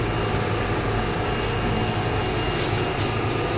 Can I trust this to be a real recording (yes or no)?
yes